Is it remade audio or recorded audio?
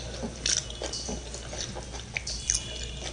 recorded